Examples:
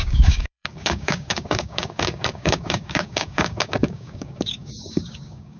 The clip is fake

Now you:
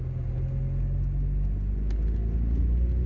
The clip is real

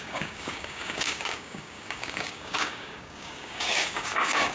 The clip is fake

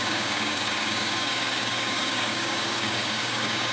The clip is fake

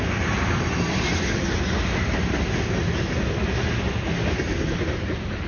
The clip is real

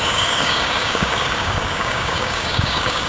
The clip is fake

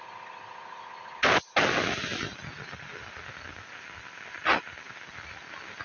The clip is real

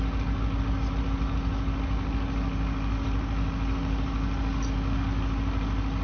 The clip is real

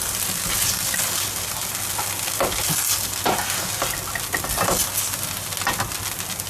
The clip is real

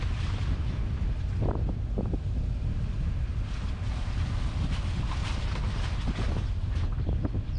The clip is real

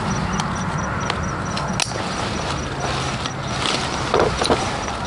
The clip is real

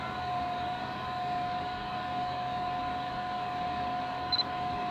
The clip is fake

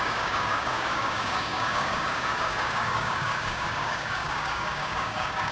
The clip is fake